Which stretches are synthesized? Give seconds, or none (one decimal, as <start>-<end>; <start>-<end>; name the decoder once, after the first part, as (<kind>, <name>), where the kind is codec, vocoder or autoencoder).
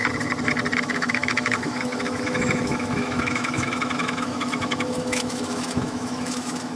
0.8-6.8 (autoencoder, DAC-VAE)